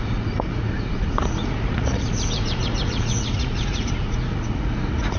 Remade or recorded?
remade